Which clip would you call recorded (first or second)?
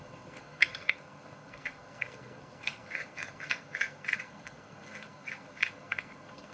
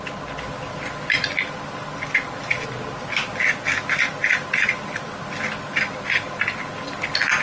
second